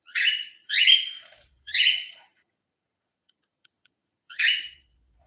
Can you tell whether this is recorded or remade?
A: remade